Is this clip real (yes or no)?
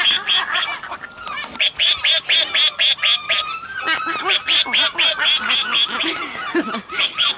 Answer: yes